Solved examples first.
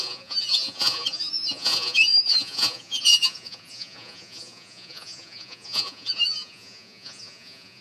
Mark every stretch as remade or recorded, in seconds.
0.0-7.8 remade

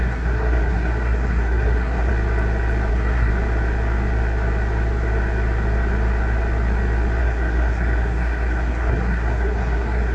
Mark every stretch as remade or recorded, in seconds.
0.0-2.1 remade; 2.1-2.9 recorded; 2.9-3.3 remade; 3.3-7.2 recorded; 7.2-10.1 remade

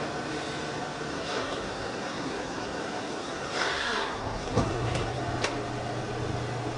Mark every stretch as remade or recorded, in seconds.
0.0-1.1 recorded; 1.1-5.2 remade; 5.2-6.8 recorded

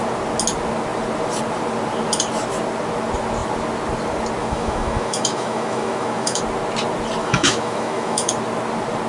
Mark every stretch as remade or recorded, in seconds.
0.0-4.4 recorded; 4.4-6.4 remade; 6.4-7.2 recorded; 7.2-8.3 remade; 8.3-9.1 recorded

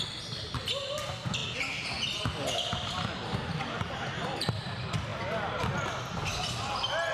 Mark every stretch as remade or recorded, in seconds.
0.0-7.1 recorded

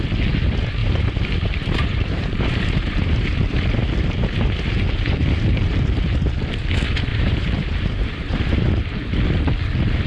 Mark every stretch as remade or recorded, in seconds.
0.0-0.8 recorded; 0.8-5.8 remade; 5.8-7.1 recorded; 7.1-8.7 remade; 8.7-10.1 recorded

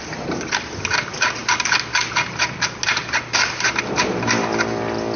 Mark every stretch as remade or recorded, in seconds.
0.0-5.2 recorded

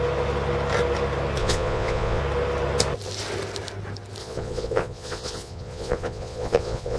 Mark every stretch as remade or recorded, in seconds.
0.0-1.4 recorded; 1.4-2.2 remade; 2.2-4.2 recorded; 4.2-7.0 remade